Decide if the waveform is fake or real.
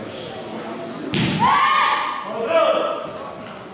real